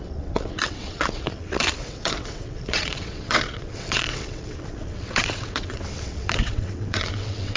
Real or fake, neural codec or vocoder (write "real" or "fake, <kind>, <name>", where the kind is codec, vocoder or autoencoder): fake, vocoder, WaveNeXt